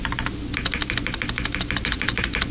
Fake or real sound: real